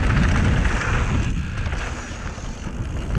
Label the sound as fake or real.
real